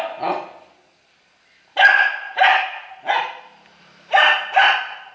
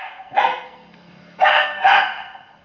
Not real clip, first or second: second